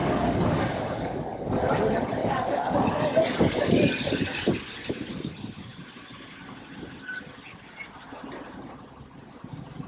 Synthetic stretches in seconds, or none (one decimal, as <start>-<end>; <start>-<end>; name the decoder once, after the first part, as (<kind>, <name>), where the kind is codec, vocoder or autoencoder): 0.0-1.6 (codec, DAC); 2.2-3.6

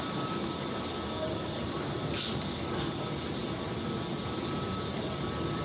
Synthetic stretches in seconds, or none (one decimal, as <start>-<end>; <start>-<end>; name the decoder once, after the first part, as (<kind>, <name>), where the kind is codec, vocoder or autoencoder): 2.5-3.0 (codec, DAC)

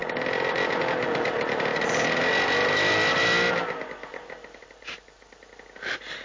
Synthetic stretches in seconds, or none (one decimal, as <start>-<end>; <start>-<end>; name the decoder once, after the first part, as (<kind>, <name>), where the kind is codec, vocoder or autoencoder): none

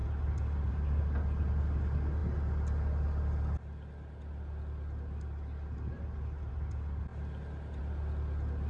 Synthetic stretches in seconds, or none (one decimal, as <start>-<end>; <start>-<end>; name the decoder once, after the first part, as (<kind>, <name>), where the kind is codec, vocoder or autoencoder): none

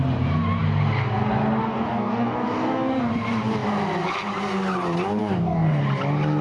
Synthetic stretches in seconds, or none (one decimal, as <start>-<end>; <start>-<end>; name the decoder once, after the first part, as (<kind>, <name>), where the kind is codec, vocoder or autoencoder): 1.6-3.1 (codec, DAC); 5.2-5.8